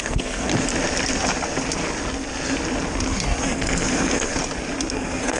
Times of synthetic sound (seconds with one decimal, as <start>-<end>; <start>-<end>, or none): 0.0-0.5; 3.4-4.3; 4.9-5.4